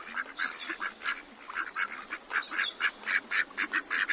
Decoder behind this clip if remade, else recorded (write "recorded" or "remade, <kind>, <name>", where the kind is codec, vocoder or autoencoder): recorded